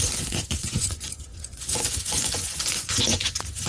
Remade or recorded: remade